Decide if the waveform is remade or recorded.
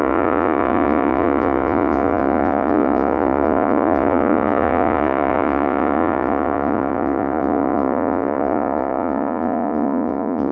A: remade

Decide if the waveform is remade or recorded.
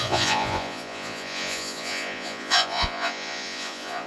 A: remade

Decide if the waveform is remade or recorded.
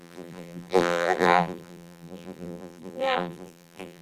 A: remade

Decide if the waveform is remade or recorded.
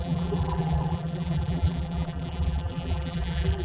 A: remade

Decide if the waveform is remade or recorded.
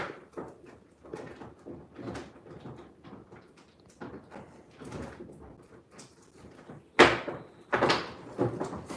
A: recorded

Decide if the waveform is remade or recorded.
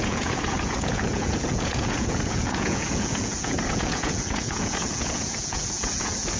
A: remade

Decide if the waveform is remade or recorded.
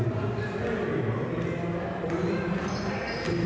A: recorded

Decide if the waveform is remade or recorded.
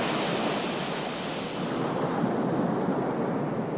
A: recorded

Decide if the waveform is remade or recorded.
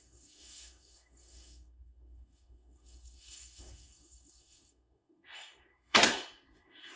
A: remade